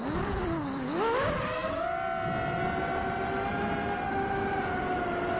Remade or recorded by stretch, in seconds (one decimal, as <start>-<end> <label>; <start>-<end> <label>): 0.0-5.4 recorded